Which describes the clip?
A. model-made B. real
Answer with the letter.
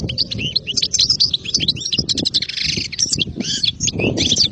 B